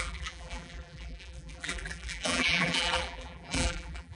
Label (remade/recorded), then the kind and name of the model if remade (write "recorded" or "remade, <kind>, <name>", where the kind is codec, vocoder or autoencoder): remade, vocoder, BigVGAN v2